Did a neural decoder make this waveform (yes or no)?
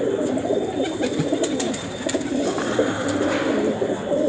no